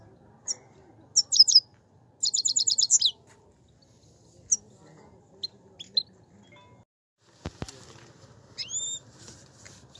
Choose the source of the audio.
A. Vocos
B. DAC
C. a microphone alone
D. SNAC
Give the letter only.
C